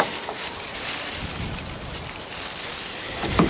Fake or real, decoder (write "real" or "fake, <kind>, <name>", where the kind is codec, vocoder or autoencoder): fake, vocoder, BigVGAN v2